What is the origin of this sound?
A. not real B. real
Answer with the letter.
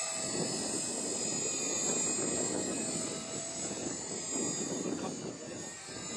B